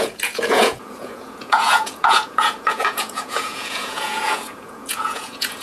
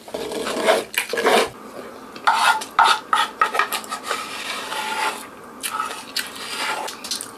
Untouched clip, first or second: second